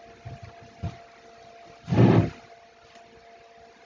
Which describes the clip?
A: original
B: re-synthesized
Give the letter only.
A